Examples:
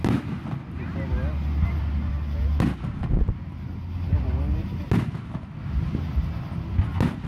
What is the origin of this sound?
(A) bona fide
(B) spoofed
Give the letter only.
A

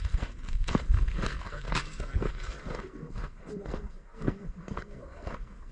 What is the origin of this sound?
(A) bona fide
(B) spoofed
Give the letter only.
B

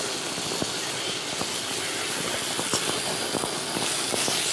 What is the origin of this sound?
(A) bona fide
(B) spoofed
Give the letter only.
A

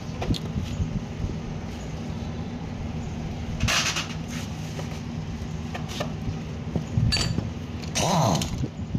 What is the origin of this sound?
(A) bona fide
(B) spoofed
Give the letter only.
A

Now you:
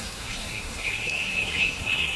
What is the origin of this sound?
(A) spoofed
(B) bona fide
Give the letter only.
A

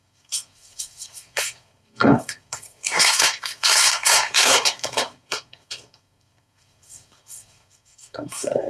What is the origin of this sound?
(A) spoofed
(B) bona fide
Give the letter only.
A